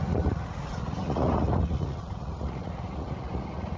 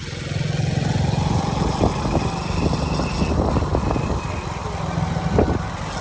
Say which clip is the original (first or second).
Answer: second